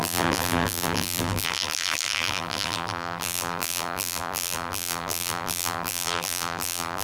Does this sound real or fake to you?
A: fake